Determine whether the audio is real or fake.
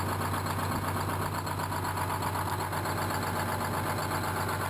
real